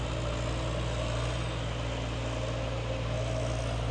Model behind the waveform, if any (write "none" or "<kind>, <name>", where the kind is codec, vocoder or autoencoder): none